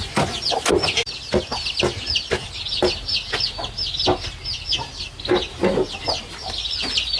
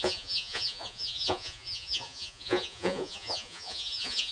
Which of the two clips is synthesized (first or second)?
second